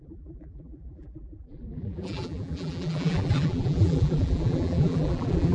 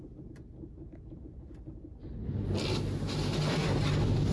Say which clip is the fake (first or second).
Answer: first